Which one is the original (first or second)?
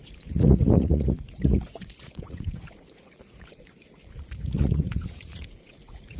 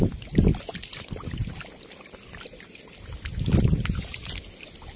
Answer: second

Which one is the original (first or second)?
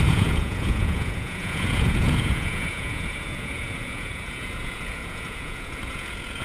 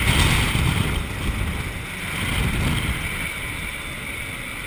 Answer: second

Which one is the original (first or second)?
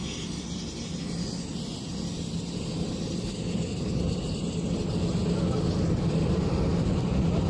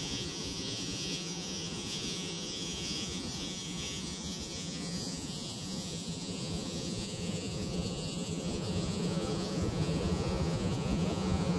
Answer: first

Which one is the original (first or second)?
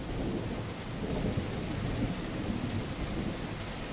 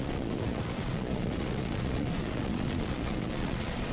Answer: first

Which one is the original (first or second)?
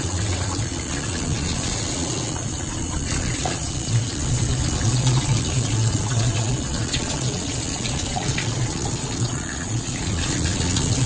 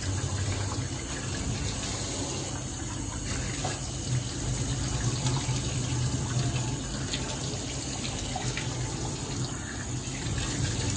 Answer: second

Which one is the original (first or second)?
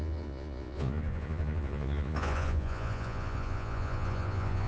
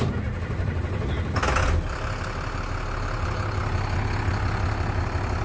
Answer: second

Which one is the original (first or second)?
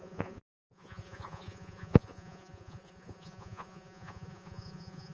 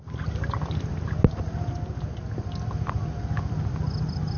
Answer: second